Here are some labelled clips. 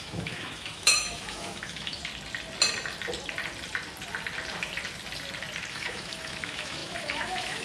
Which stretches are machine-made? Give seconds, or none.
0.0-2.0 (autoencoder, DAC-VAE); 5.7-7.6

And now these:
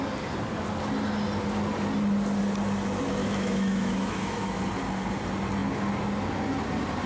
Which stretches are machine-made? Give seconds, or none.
3.2-4.6 (autoencoder, DAC-VAE)

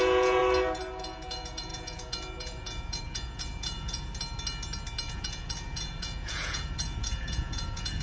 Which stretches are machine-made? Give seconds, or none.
0.0-0.4 (vocoder, Vocos); 1.0-4.1; 5.0-8.0

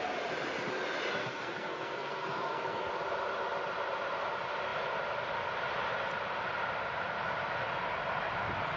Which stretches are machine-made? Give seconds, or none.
1.2-2.9 (codec, SNAC)

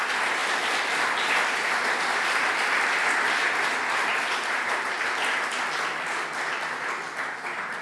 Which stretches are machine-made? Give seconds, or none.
none